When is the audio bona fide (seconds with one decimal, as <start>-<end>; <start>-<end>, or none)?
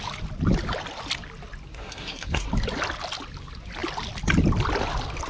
0.0-1.7; 2.5-5.3